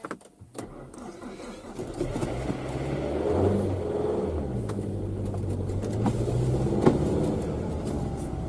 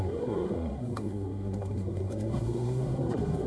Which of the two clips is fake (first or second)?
second